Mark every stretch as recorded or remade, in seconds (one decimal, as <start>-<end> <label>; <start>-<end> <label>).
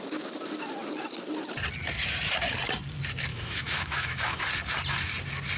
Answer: 0.0-3.3 recorded; 3.3-4.4 remade; 4.4-5.6 recorded